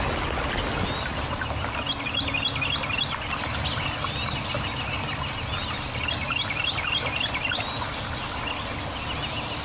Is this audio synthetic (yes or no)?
no